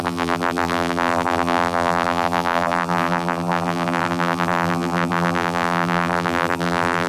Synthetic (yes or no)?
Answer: yes